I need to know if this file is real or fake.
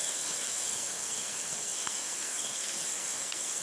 fake